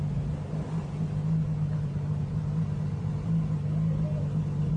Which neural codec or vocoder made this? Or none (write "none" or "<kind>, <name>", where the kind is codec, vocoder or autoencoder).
none